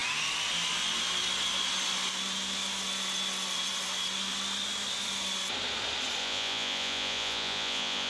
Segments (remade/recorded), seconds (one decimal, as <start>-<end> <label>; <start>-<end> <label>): 0.0-6.2 recorded; 6.2-8.1 remade